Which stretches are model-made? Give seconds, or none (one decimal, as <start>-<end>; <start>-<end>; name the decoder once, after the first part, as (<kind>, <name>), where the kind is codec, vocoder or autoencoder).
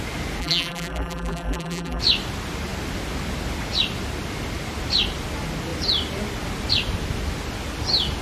0.4-2.0 (vocoder, BigVGAN v2)